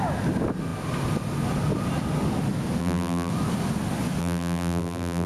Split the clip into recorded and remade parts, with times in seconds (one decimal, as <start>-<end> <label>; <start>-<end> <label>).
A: 0.0-2.8 recorded; 2.8-3.3 remade; 3.3-4.2 recorded; 4.2-5.3 remade